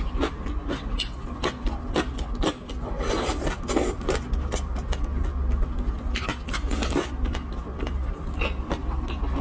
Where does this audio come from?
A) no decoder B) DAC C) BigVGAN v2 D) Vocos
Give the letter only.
A